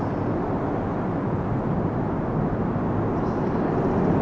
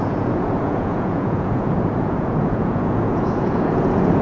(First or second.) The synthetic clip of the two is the second